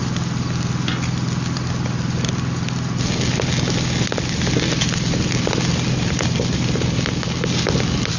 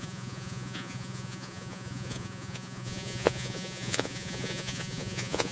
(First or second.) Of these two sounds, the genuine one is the first